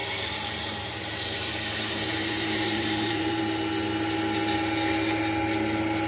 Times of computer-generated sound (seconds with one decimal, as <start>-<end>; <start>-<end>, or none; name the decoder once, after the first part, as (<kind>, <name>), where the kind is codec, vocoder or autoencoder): 0.0-3.4 (vocoder, BigVGAN v2)